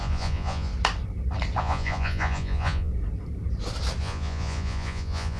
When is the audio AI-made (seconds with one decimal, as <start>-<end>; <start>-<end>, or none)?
0.0-0.7; 1.6-2.9; 4.0-5.4